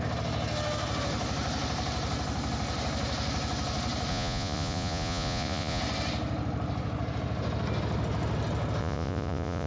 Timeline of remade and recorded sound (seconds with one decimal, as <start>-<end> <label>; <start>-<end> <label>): 0.0-4.1 recorded; 4.1-5.8 remade; 5.8-8.8 recorded; 8.8-9.7 remade